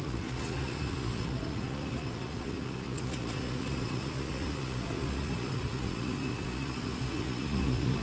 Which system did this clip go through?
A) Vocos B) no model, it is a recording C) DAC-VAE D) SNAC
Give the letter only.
A